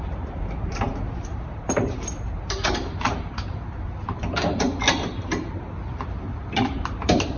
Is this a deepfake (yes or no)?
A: yes